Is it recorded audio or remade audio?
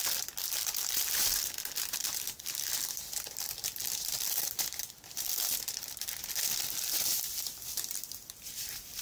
remade